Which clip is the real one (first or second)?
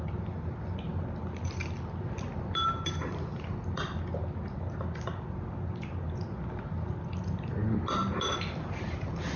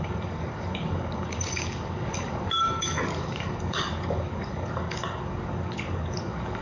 first